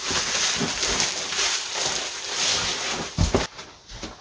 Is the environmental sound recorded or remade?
recorded